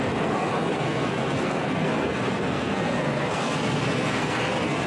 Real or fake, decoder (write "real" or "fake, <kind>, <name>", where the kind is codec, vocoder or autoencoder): fake, codec, SNAC